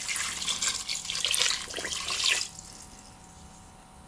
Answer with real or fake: real